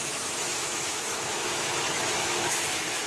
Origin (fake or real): fake